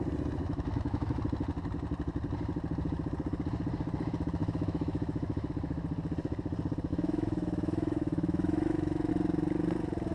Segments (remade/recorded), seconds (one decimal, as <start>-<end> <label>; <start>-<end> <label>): 0.0-0.4 recorded; 0.4-1.2 remade; 1.2-4.4 recorded; 4.4-5.5 remade; 5.5-6.9 recorded; 6.9-9.1 remade; 9.1-10.1 recorded